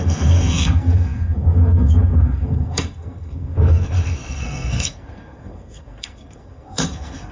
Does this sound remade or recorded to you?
remade